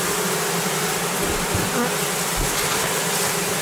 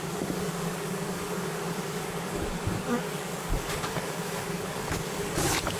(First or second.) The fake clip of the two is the second